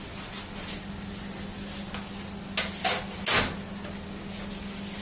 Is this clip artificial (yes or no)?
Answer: no